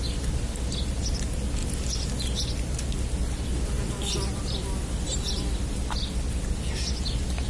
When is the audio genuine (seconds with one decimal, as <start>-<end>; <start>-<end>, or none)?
0.0-7.5